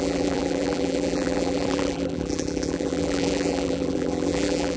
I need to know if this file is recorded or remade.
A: remade